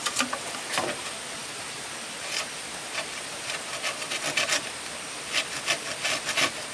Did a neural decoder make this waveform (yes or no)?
no